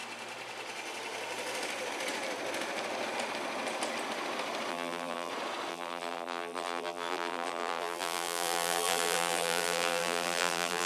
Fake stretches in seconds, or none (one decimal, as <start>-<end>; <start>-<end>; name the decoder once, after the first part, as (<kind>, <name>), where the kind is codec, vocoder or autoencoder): 4.7-5.3 (vocoder, BigVGAN v2); 5.7-10.9